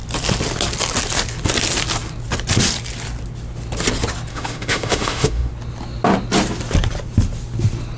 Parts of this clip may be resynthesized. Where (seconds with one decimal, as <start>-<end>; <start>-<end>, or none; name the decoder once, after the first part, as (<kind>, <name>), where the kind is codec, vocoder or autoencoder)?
4.3-5.5 (autoencoder, DAC-VAE)